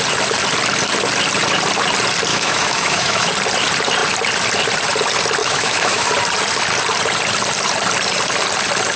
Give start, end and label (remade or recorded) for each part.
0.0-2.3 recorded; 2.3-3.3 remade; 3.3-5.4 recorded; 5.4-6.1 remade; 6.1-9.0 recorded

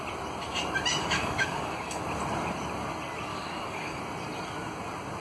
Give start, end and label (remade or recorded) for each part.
0.0-1.0 recorded; 1.0-2.0 remade; 2.0-3.3 recorded; 3.3-4.0 remade; 4.0-5.2 recorded

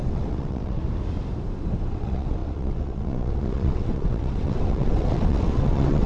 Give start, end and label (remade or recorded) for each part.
0.0-0.8 remade; 0.8-1.9 recorded; 1.9-6.1 remade

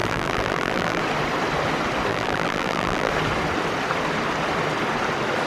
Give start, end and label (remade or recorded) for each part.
0.0-1.0 remade; 1.0-2.1 recorded; 2.1-3.1 remade; 3.1-5.5 recorded

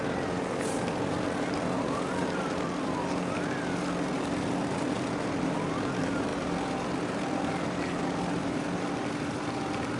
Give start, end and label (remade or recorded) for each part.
0.0-10.0 recorded

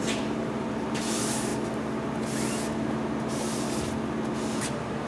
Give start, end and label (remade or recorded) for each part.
0.0-1.5 remade; 1.5-4.6 recorded; 4.6-5.1 remade